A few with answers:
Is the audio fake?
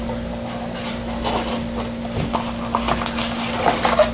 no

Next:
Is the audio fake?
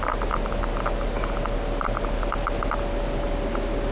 no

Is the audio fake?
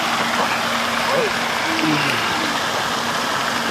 no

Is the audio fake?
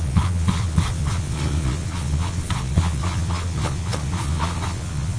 yes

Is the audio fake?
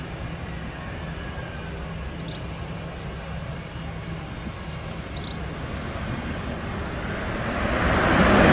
no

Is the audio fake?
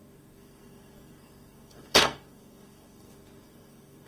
yes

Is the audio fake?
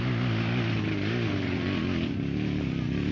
no